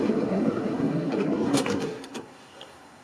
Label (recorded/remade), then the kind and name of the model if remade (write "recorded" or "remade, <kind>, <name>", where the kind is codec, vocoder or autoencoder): remade, codec, SNAC